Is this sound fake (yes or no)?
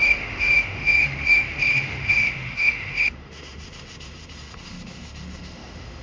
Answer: yes